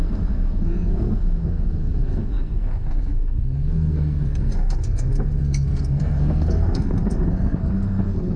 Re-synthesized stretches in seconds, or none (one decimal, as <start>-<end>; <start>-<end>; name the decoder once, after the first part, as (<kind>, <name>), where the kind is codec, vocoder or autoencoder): 0.0-8.4 (codec, SNAC)